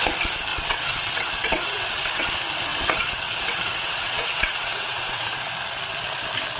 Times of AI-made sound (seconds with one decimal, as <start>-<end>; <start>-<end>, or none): 0.5-2.3; 2.7-5.5